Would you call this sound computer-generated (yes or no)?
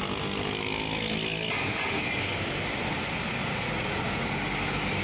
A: no